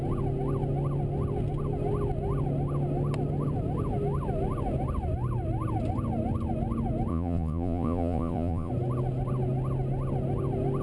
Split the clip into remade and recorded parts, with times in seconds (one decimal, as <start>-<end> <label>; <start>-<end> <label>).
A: 0.0-7.1 recorded; 7.1-8.7 remade; 8.7-10.8 recorded